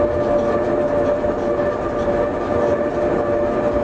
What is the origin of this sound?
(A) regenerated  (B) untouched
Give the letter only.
B